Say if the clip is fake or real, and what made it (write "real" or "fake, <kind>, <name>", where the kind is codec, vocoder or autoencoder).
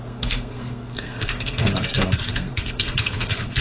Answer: fake, codec, SNAC